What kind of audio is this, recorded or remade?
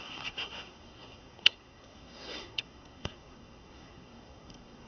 remade